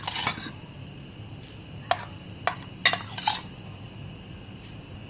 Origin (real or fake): real